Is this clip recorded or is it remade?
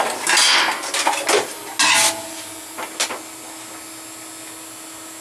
recorded